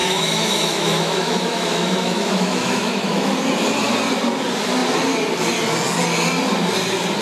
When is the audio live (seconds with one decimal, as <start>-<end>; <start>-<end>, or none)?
3.3-7.2